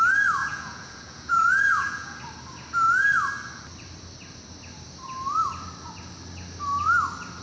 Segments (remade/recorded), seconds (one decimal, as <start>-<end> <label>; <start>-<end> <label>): 0.0-0.4 recorded; 0.4-2.2 remade; 2.2-7.4 recorded